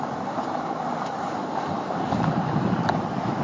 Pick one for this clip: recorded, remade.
remade